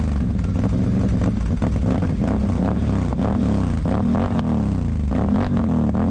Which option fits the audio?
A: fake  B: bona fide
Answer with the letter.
B